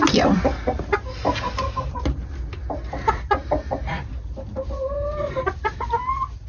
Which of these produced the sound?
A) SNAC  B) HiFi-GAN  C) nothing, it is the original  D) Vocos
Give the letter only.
C